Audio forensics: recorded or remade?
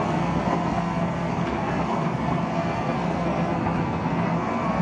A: remade